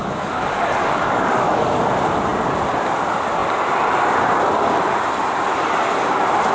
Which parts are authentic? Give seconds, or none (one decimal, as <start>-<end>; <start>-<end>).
1.6-6.5